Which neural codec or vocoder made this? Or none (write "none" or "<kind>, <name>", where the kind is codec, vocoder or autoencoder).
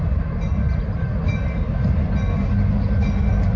none